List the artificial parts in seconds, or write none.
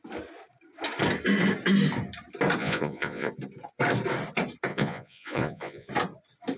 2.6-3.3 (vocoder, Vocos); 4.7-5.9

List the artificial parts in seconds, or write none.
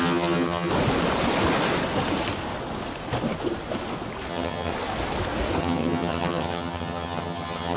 0.0-0.7 (vocoder, HiFi-GAN); 4.3-4.7; 5.6-7.8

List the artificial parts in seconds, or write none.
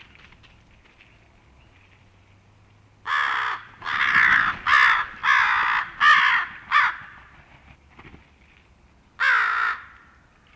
none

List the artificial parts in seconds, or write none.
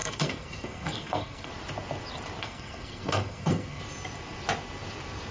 0.0-1.5 (codec, SNAC); 2.4-3.8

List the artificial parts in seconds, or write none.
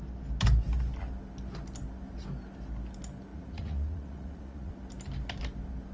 3.3-4.7 (vocoder, Vocos)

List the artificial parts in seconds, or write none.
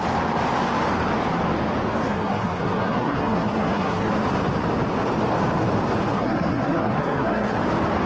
2.0-4.1 (codec, SNAC); 6.1-7.6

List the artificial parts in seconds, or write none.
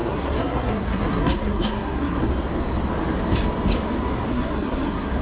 0.0-2.3 (codec, SNAC); 4.3-5.2